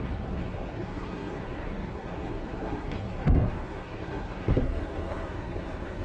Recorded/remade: remade